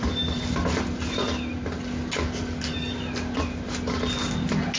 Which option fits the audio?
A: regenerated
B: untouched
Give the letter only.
B